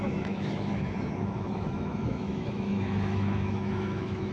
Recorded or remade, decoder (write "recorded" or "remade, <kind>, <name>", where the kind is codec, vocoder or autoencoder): remade, autoencoder, DAC-VAE